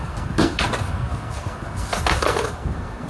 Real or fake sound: fake